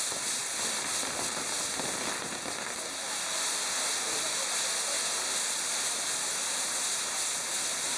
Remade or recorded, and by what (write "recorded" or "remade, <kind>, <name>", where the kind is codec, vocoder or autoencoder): recorded